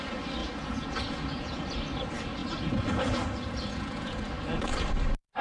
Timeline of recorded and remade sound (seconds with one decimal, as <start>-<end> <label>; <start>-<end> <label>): 0.0-0.4 recorded; 0.4-1.6 remade; 1.6-2.4 recorded; 2.4-4.2 remade; 4.2-5.4 recorded